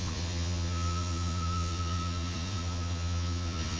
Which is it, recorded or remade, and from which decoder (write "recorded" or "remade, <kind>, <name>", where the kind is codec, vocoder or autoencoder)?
remade, vocoder, Vocos